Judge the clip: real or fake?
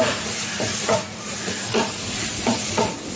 fake